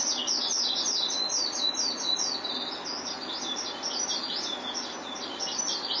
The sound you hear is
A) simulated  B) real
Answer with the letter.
B